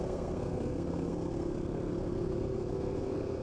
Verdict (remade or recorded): remade